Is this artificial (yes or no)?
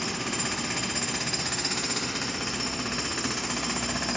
no